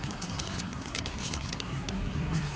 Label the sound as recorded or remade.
remade